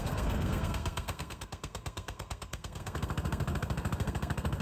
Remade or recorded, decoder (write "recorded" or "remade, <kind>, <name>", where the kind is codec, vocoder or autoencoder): remade, codec, SNAC